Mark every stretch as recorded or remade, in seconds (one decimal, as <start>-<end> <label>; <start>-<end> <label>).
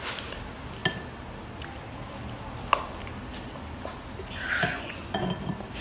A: 0.0-4.7 recorded; 4.7-5.3 remade; 5.3-5.8 recorded